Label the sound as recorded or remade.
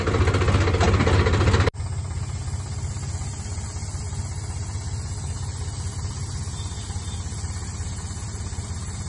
recorded